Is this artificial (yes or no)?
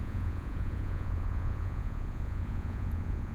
yes